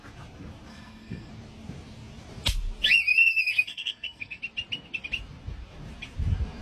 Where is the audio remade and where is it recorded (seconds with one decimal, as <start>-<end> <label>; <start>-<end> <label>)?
0.0-0.7 recorded; 0.7-1.3 remade; 1.3-3.1 recorded; 3.1-4.4 remade; 4.4-6.6 recorded